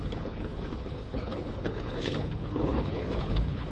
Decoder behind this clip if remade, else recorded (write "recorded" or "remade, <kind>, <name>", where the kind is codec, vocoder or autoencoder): remade, codec, HILCodec